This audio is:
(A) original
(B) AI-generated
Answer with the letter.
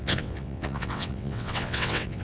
B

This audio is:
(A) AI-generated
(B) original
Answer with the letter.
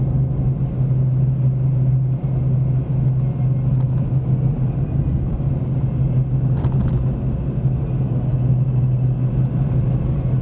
B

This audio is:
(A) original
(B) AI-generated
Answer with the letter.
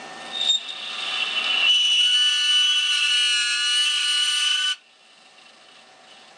A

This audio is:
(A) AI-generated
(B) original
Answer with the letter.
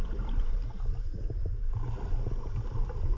B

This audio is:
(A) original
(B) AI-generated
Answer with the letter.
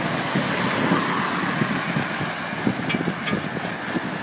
A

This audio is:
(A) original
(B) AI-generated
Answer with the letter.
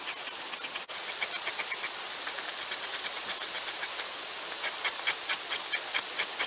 A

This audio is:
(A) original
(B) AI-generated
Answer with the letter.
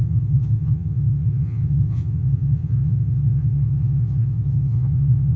B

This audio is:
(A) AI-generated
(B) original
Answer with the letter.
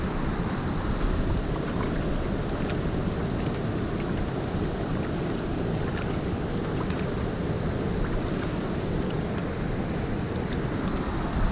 B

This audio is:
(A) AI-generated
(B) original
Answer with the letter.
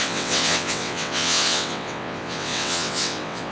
A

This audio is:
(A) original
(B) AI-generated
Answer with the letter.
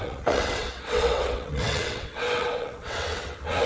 B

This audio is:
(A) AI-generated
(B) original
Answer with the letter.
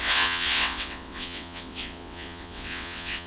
A